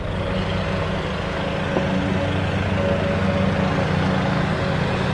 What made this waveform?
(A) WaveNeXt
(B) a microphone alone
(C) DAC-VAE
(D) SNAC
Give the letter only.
B